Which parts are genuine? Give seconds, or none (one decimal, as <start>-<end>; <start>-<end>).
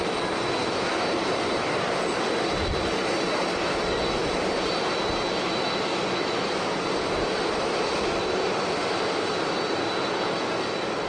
0.0-11.1